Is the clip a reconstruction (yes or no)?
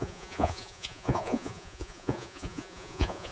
yes